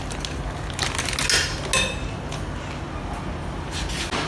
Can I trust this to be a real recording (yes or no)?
yes